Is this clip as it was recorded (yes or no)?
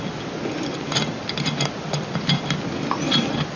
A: yes